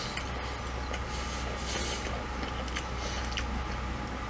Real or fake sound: real